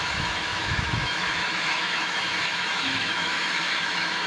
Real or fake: fake